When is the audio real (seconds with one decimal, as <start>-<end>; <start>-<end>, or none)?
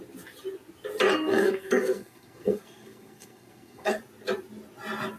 0.0-1.3; 4.0-5.2